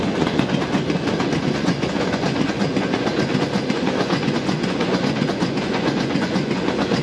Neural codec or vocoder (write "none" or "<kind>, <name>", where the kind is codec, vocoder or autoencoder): vocoder, Vocos